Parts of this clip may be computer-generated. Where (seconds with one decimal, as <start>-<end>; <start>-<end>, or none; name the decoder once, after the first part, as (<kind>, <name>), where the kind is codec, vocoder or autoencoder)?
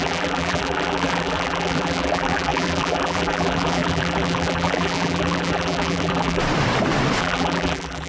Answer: 0.0-6.4 (vocoder, BigVGAN v2); 7.2-8.1